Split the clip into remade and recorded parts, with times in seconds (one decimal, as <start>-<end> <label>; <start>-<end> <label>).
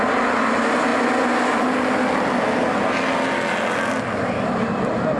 0.0-5.2 recorded